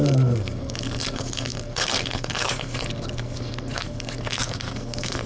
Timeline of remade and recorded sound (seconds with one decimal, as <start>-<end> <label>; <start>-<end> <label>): 0.0-5.3 remade